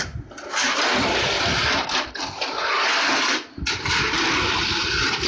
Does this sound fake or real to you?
real